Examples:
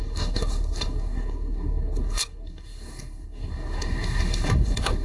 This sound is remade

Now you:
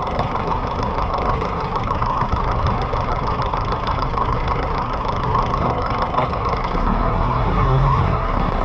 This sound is remade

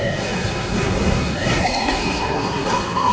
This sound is remade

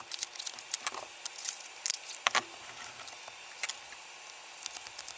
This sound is recorded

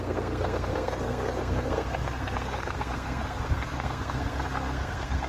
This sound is remade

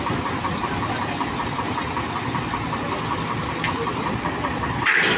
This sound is recorded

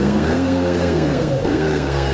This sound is remade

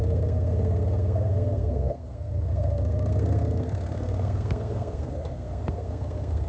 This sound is remade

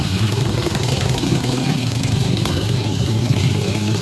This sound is remade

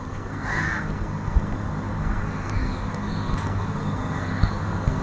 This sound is remade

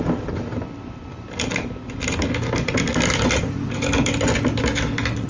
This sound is recorded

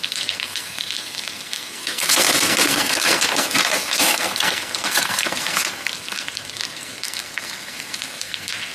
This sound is remade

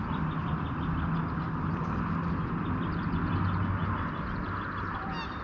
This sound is recorded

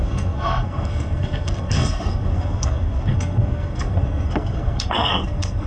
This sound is remade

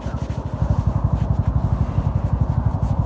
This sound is recorded